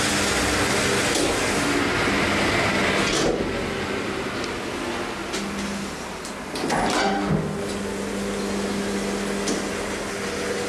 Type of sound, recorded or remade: recorded